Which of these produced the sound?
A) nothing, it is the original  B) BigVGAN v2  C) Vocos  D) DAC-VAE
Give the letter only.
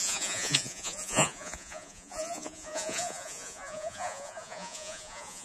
C